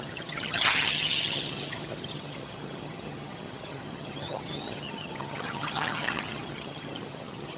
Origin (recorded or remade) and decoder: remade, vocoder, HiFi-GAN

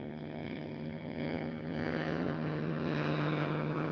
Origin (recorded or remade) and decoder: remade, vocoder, HiFi-GAN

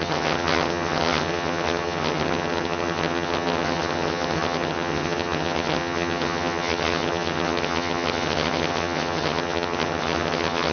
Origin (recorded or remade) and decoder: remade, vocoder, HiFi-GAN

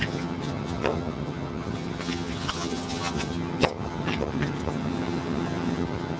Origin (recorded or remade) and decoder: remade, vocoder, HiFi-GAN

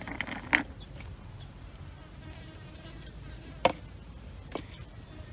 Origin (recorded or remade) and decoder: recorded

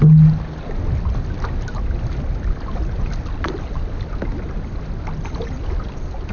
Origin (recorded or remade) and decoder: recorded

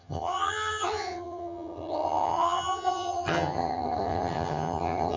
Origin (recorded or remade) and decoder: remade, vocoder, HiFi-GAN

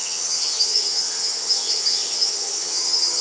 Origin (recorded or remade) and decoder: remade, vocoder, HiFi-GAN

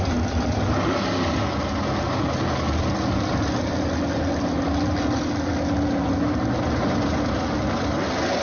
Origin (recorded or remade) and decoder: recorded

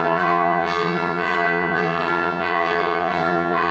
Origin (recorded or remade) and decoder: remade, vocoder, HiFi-GAN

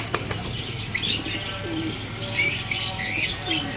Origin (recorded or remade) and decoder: recorded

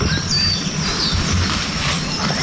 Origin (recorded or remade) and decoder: recorded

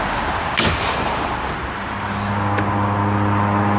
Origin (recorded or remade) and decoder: recorded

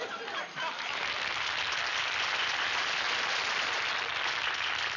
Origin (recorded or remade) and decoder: recorded